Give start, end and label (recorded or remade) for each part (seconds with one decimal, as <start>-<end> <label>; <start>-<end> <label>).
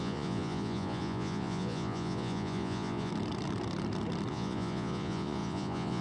0.0-3.1 remade; 3.1-4.3 recorded; 4.3-6.0 remade